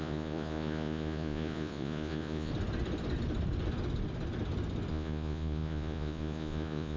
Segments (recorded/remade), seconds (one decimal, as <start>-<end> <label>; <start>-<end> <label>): 0.0-2.5 remade; 2.5-4.9 recorded; 4.9-7.0 remade